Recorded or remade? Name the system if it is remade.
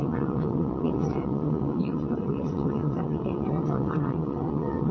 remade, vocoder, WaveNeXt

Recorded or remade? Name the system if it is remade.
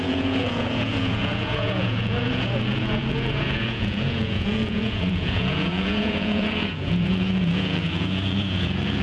remade, vocoder, Vocos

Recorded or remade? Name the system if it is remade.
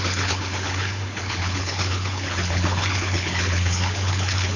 remade, codec, HILCodec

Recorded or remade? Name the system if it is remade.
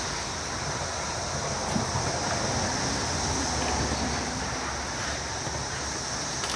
recorded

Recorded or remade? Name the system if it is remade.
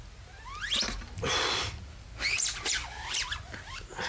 recorded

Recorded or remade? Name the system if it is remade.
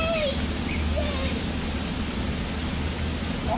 recorded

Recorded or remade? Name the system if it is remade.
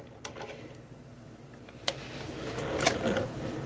recorded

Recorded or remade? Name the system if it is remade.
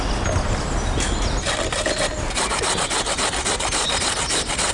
recorded